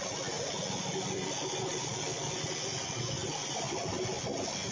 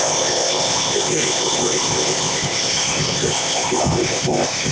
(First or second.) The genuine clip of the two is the first